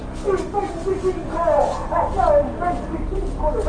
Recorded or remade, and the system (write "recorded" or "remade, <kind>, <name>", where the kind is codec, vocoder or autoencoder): recorded